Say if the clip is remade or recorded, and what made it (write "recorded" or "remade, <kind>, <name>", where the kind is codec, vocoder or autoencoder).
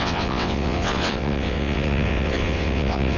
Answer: remade, vocoder, WaveNeXt